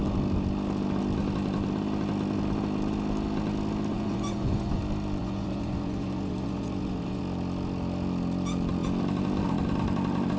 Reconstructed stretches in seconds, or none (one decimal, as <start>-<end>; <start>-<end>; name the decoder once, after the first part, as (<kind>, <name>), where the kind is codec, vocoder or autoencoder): 3.9-4.8 (vocoder, Vocos); 5.2-7.2